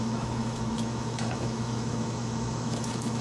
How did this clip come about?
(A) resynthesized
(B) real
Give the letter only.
A